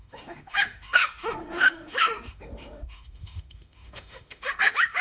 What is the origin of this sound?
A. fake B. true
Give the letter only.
A